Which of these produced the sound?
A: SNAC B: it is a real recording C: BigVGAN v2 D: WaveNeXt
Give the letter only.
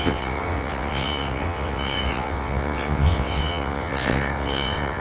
D